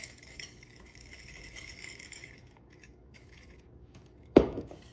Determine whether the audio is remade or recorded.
remade